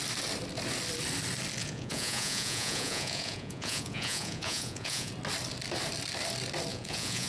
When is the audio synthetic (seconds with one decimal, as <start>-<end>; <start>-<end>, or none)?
1.6-5.1; 6.7-7.3